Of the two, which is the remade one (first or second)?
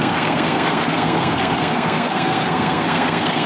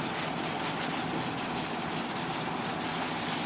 first